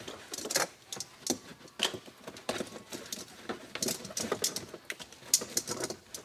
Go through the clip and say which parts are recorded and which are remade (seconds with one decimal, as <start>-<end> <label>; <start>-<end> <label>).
0.0-6.2 recorded